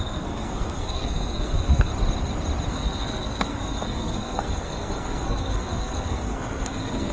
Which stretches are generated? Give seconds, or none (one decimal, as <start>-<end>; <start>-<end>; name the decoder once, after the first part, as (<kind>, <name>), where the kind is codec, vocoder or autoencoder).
0.0-1.9 (codec, SNAC); 2.7-7.1